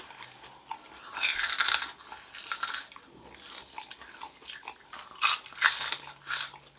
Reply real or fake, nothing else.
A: real